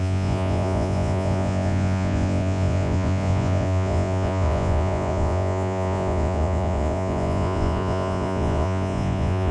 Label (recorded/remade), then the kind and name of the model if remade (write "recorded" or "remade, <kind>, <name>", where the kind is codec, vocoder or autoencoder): remade, vocoder, Vocos